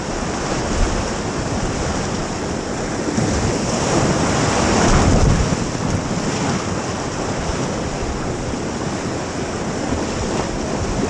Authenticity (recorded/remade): recorded